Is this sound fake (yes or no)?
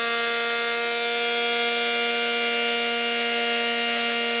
no